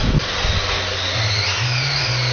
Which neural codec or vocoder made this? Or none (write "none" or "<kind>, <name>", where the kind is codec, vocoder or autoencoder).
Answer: none